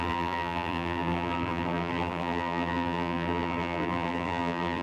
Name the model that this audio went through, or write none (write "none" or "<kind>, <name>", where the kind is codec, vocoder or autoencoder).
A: vocoder, BigVGAN v2